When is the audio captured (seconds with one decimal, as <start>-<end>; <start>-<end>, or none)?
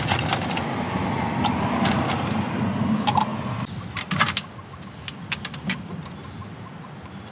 0.0-7.3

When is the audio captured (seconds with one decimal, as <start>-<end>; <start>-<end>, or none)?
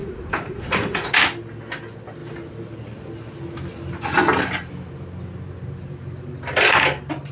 1.2-7.3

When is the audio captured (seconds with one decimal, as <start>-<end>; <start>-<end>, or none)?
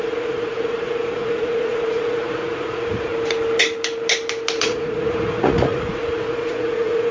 3.1-4.6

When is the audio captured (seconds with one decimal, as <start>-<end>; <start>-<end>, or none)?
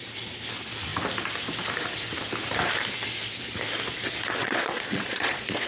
0.0-4.4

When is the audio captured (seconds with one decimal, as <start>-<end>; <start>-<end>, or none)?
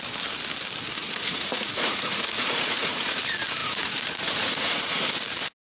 0.0-1.0; 3.2-3.6; 4.8-5.6